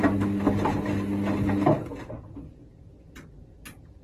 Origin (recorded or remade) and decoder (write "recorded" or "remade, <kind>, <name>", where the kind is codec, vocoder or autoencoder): recorded